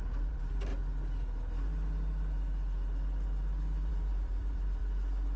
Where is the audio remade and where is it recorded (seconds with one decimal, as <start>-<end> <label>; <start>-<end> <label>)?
0.0-0.7 remade; 0.7-3.9 recorded; 3.9-4.8 remade; 4.8-5.4 recorded